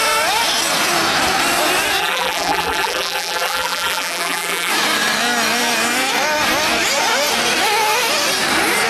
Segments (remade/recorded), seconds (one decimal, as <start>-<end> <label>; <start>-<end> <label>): 0.0-2.0 recorded; 2.0-4.7 remade; 4.7-8.9 recorded